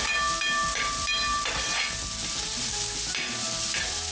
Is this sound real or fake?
real